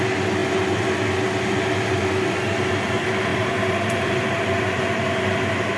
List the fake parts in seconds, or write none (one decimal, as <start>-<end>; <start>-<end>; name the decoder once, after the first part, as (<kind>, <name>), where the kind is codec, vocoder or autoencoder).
3.3-4.1 (vocoder, BigVGAN v2)